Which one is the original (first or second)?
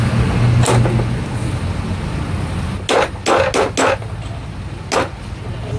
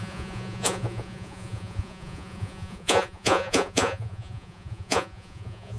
first